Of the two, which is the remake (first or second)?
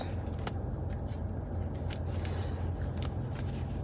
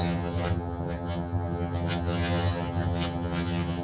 second